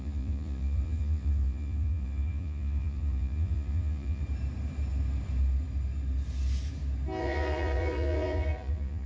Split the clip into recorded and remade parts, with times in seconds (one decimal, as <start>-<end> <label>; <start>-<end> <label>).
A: 0.0-4.2 remade; 4.2-7.2 recorded; 7.2-9.1 remade